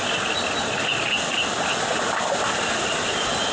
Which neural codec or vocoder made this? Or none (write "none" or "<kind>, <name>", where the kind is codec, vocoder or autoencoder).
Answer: none